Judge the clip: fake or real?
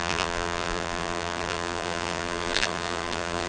fake